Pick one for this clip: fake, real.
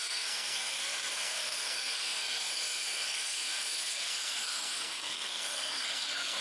fake